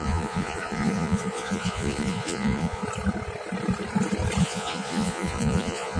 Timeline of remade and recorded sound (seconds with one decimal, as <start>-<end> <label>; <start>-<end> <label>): 0.0-2.8 remade; 2.8-4.4 recorded; 4.4-6.0 remade